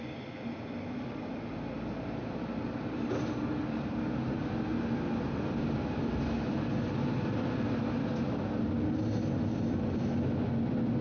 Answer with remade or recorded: recorded